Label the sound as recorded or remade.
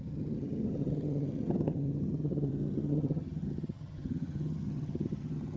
remade